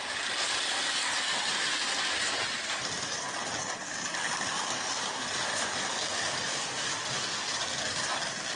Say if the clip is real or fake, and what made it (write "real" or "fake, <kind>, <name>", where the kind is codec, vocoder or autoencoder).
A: real